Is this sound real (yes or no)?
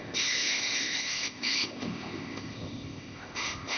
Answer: no